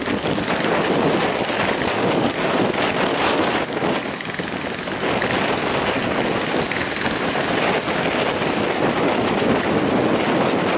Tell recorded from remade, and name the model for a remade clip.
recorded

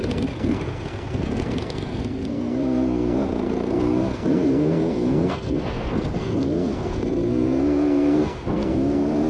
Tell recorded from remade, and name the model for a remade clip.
remade, codec, SNAC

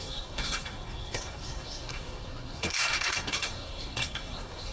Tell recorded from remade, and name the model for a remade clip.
remade, codec, SNAC